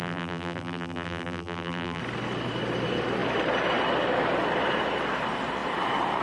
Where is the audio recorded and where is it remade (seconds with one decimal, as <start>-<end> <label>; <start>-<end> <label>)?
0.0-2.0 remade; 2.0-6.2 recorded